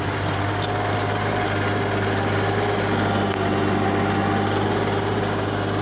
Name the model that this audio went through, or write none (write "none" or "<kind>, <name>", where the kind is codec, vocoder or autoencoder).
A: none